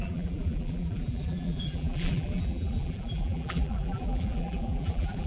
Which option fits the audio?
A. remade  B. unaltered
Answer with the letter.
A